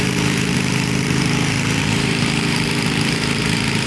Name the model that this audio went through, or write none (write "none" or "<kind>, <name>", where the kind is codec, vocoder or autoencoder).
vocoder, BigVGAN v2